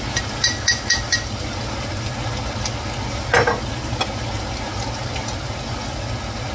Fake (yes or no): no